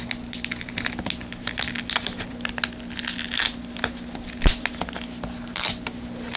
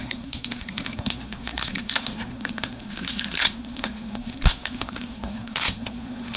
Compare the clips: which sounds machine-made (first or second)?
second